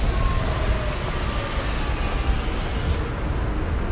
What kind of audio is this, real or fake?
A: real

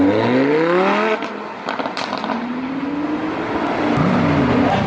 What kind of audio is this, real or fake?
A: real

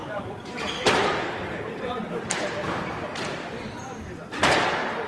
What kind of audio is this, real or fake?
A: fake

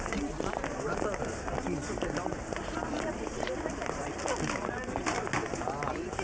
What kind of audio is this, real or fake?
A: real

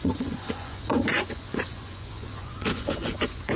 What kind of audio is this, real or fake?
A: fake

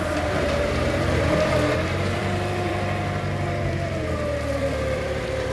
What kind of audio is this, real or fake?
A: fake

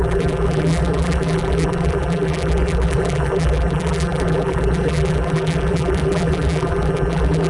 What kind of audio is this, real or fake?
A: fake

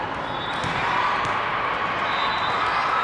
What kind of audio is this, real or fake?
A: real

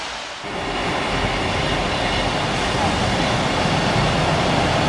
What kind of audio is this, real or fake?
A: real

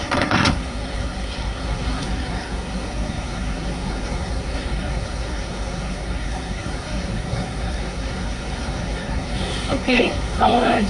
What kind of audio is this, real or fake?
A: fake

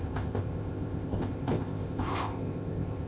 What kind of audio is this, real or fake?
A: fake